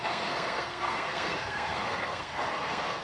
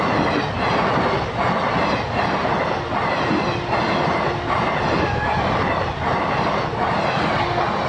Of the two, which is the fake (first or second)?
first